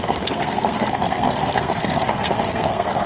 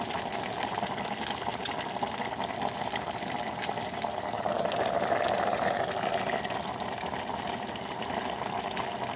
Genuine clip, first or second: second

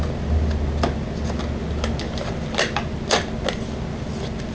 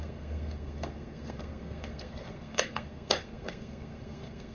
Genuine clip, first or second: first